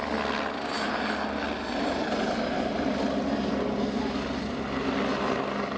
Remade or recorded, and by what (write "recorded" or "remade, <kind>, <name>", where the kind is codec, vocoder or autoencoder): recorded